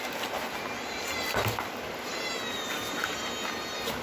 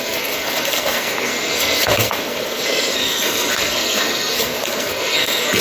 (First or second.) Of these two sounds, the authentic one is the first